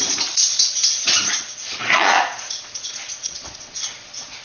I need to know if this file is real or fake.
fake